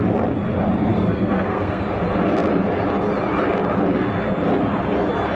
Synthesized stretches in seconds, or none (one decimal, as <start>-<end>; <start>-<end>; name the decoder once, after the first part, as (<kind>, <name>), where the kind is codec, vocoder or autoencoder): 0.9-1.8 (codec, SNAC)